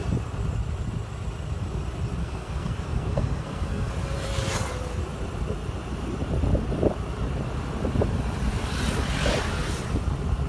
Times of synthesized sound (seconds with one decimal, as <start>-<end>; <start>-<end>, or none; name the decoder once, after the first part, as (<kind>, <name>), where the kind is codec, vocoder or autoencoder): 2.2-3.9 (codec, SNAC)